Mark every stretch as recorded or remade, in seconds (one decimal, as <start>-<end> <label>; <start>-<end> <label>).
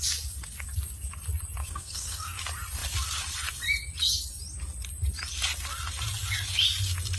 0.0-1.6 recorded; 1.6-2.4 remade; 2.4-7.2 recorded